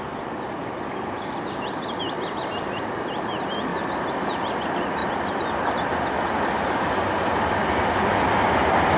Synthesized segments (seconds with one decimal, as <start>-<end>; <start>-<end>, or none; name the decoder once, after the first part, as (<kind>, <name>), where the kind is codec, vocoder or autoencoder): 0.0-3.7 (vocoder, BigVGAN v2); 4.6-5.0; 8.5-9.0